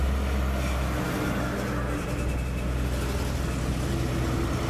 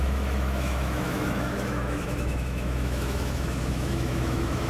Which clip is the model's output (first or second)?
second